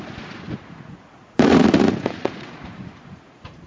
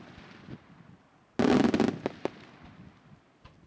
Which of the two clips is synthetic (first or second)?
first